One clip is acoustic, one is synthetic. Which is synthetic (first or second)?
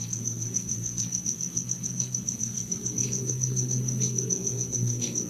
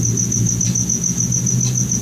first